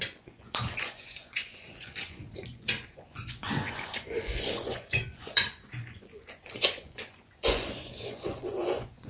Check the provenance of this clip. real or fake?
fake